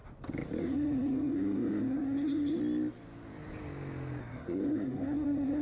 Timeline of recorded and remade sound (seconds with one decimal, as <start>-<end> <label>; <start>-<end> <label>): 0.0-0.6 recorded; 0.6-2.6 remade; 2.6-4.2 recorded; 4.2-5.6 remade